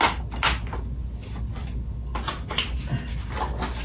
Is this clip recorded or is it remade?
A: recorded